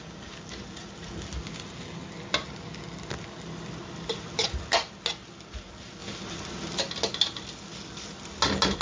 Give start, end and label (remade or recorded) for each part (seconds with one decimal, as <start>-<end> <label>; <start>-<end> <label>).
0.0-8.8 recorded